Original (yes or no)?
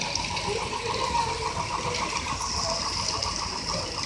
yes